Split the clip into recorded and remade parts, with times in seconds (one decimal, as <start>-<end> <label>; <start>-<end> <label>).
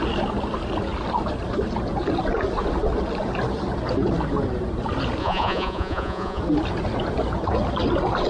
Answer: 0.0-5.2 recorded; 5.2-6.4 remade; 6.4-8.3 recorded